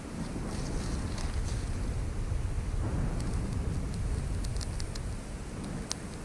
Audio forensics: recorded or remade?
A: recorded